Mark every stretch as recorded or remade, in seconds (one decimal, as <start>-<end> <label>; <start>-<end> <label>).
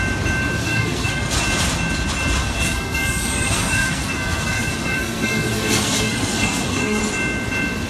0.0-0.6 recorded; 0.6-1.4 remade; 1.4-2.4 recorded; 2.4-7.0 remade; 7.0-7.9 recorded